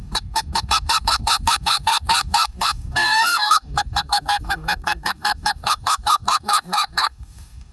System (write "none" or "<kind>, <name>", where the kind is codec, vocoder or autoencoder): codec, DAC